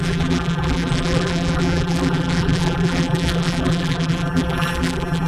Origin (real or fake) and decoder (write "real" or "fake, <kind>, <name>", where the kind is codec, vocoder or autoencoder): fake, vocoder, BigVGAN v2